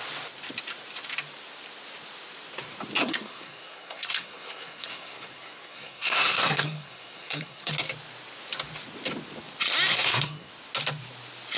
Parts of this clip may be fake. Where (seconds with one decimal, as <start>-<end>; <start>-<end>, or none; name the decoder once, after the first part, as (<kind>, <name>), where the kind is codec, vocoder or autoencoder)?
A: 3.0-7.7 (codec, SNAC); 9.9-10.5